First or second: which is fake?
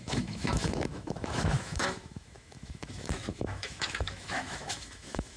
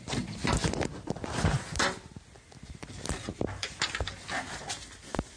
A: first